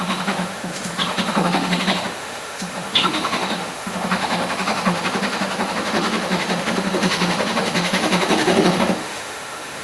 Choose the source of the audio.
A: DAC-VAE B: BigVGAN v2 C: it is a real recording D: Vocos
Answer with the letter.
A